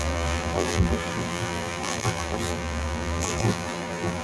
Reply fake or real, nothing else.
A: fake